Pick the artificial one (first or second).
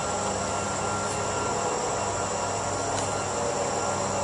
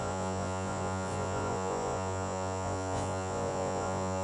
second